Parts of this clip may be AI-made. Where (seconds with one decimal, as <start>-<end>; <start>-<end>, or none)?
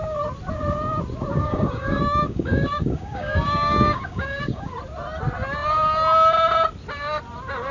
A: 1.3-4.7